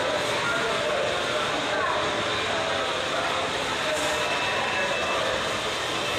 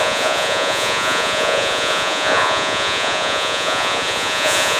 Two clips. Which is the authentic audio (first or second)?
first